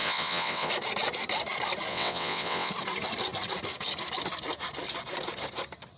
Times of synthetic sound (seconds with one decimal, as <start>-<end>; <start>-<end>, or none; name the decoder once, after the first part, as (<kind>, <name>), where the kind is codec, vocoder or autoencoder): 0.0-0.7 (vocoder, WaveNeXt); 1.9-2.7